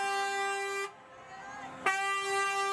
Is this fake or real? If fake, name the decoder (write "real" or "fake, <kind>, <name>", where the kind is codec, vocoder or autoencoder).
real